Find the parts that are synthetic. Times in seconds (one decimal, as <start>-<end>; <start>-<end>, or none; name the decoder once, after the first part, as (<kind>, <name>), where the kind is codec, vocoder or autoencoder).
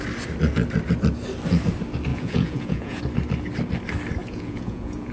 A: 2.1-3.0 (vocoder, Vocos); 4.2-5.1